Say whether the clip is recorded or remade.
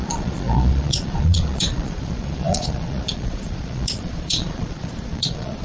remade